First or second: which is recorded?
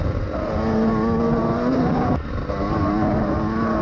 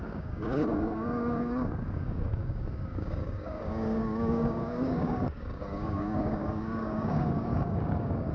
first